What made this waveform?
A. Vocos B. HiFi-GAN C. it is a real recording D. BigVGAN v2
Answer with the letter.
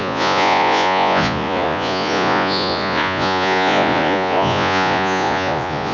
A